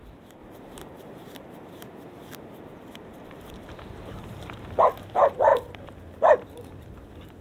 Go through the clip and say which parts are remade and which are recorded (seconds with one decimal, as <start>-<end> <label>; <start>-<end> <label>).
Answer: 0.0-0.4 recorded; 0.4-4.8 remade; 4.8-5.5 recorded; 5.5-7.4 remade